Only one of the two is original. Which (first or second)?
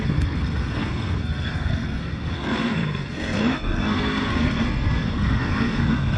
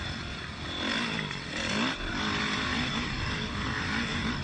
second